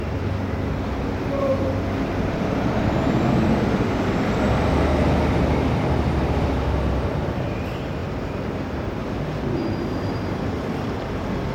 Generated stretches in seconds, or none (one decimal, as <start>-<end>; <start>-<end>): none